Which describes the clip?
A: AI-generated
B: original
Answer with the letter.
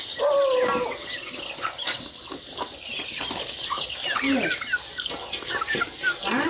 B